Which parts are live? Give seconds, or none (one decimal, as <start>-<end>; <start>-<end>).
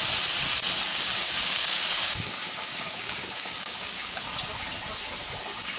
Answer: 0.0-0.9; 4.2-5.8